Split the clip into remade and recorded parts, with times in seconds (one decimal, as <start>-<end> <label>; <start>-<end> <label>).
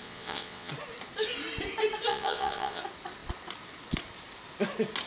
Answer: 0.0-0.7 remade; 0.7-2.1 recorded; 2.1-2.8 remade; 2.8-5.1 recorded